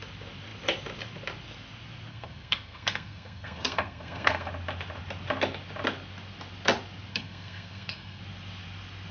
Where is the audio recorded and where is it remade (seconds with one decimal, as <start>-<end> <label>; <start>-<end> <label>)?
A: 0.0-2.1 recorded; 2.1-4.5 remade; 4.5-7.1 recorded; 7.1-8.2 remade; 8.2-9.1 recorded